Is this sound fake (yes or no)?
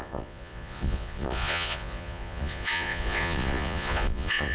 yes